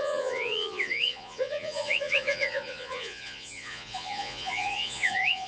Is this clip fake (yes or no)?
yes